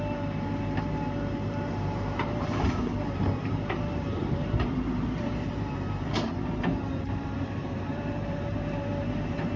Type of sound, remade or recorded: remade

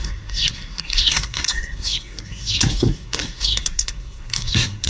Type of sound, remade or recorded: remade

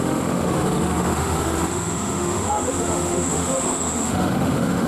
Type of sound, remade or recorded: remade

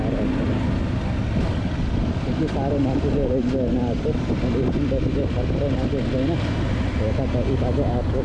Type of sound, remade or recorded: recorded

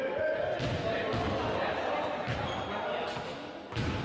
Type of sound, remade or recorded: recorded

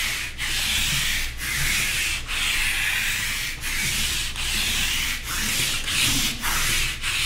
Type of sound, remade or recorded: recorded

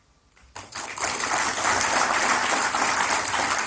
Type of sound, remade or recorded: recorded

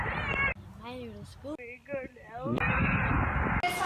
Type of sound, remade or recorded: recorded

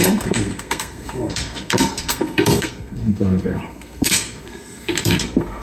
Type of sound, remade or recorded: remade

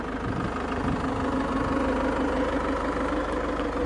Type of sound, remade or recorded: recorded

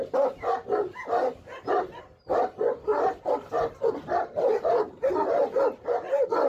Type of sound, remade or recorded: recorded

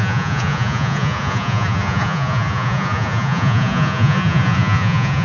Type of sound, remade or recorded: remade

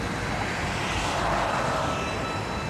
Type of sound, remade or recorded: recorded